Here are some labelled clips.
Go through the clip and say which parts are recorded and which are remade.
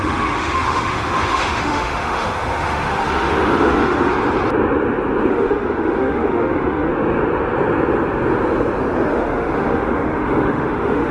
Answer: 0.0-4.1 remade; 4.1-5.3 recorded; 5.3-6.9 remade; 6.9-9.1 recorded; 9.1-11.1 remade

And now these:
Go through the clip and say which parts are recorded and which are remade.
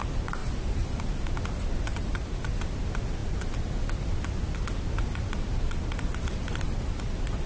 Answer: 0.0-0.4 recorded; 0.4-1.1 remade; 1.1-1.9 recorded; 1.9-2.6 remade; 2.6-7.5 recorded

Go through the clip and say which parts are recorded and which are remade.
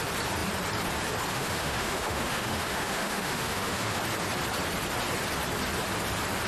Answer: 0.0-1.3 recorded; 1.3-4.0 remade; 4.0-6.5 recorded